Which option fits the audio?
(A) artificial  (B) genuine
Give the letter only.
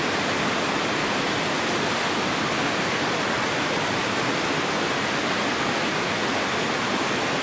B